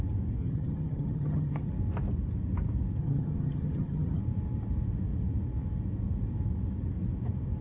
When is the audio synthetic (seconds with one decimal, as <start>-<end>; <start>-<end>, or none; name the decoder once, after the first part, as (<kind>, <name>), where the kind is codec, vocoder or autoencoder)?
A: 0.4-1.7 (vocoder, HiFi-GAN); 3.0-4.2